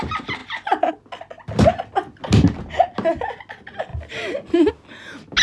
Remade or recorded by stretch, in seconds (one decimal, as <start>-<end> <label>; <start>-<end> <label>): 0.0-5.4 recorded